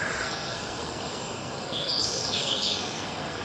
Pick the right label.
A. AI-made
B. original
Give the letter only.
A